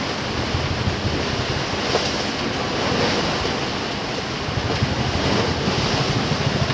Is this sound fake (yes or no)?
no